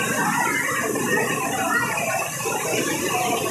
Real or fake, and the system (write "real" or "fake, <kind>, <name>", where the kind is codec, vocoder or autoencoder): real